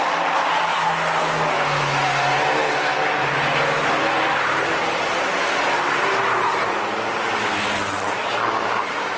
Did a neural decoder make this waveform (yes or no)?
no